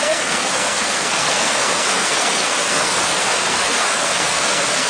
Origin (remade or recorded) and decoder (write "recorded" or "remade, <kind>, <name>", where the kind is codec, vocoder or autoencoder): remade, codec, SNAC